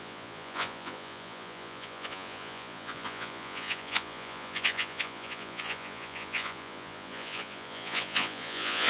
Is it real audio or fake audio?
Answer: fake